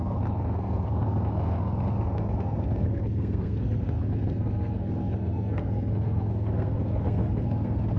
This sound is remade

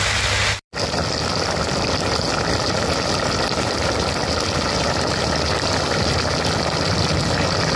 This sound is recorded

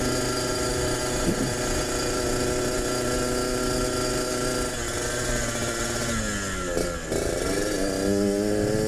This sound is recorded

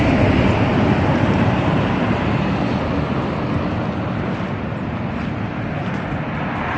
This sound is recorded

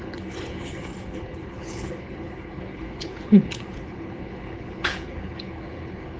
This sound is remade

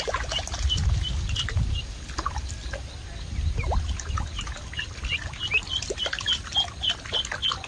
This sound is recorded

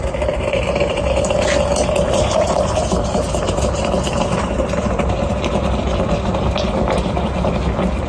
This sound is recorded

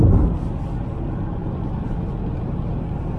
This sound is recorded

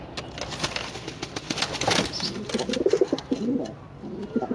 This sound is recorded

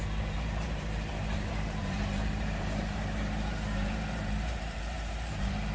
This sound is remade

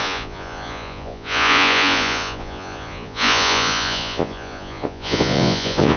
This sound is remade